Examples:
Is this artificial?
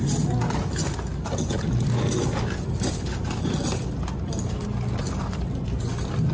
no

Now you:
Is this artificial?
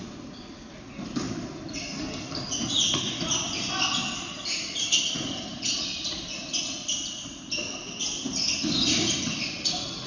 no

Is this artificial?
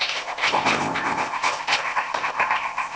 yes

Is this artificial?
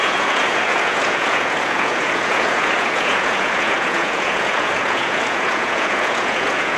yes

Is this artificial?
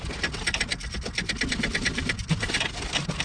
no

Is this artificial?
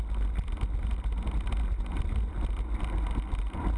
no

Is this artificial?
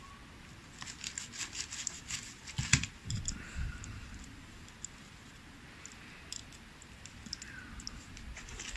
no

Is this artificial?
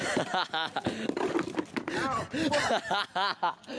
no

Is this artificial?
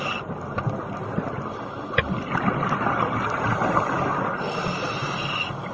no